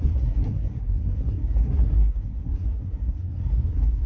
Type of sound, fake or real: fake